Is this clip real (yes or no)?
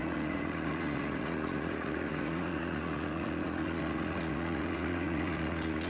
no